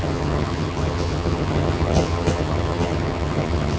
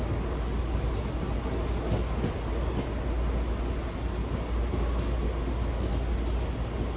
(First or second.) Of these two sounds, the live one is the second